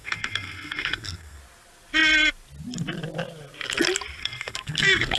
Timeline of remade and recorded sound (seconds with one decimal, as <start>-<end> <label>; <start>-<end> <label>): 0.0-1.4 remade; 1.4-4.2 recorded; 4.2-5.2 remade